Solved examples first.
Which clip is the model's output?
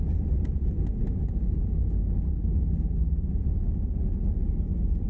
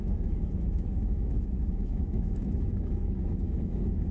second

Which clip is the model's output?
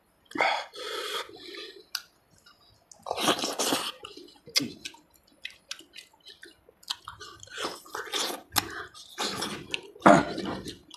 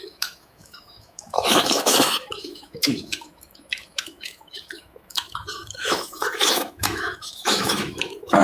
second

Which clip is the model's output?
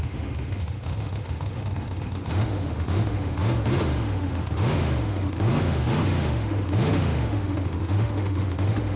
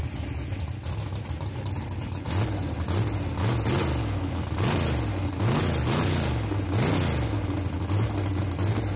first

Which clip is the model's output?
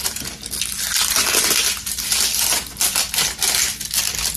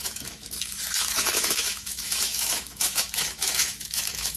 second